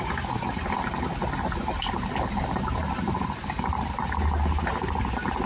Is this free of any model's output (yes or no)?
yes